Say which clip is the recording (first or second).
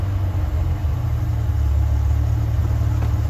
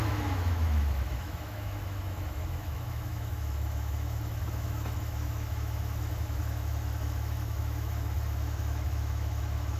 first